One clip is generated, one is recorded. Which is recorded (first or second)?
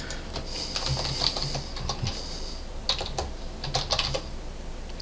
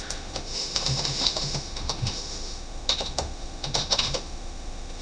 first